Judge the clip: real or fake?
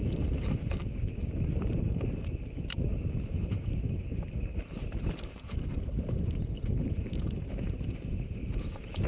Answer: fake